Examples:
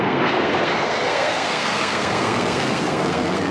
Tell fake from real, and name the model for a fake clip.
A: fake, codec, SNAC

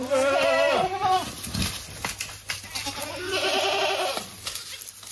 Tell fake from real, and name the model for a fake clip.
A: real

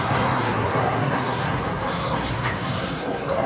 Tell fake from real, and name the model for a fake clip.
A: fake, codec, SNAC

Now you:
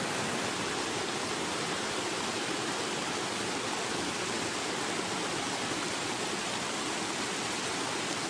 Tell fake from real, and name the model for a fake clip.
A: real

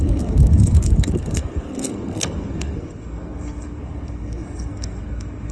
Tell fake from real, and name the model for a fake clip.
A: fake, codec, SNAC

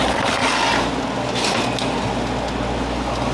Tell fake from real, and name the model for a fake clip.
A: real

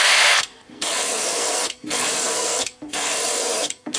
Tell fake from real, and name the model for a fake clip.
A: fake, codec, SNAC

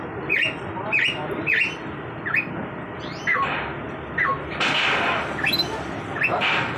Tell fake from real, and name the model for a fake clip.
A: real